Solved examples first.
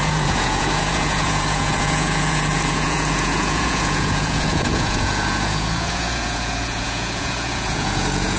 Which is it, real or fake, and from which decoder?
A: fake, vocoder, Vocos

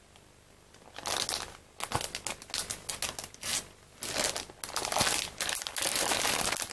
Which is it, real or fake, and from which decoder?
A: real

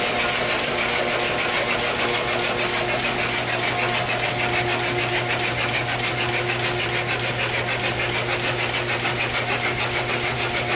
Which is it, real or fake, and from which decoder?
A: real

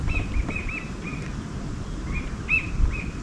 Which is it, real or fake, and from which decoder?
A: real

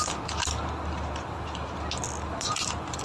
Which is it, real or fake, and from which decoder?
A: real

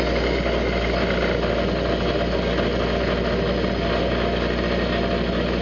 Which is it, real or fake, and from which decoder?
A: real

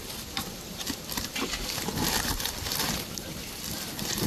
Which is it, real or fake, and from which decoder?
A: fake, vocoder, BigVGAN v2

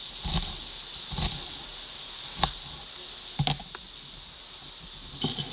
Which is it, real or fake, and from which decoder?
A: real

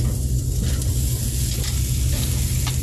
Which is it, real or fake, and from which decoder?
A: real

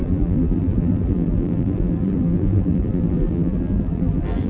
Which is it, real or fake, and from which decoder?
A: fake, vocoder, BigVGAN v2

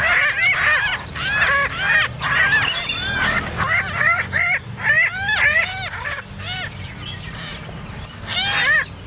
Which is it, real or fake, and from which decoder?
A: real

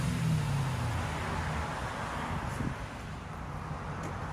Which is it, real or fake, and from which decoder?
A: real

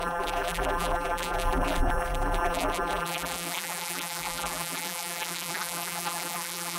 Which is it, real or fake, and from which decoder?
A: fake, vocoder, BigVGAN v2